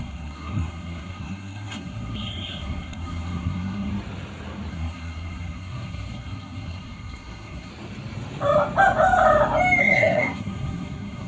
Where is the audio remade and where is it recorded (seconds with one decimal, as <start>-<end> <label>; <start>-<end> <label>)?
0.0-3.9 remade; 3.9-4.7 recorded; 4.7-7.7 remade; 7.7-9.8 recorded; 9.8-11.3 remade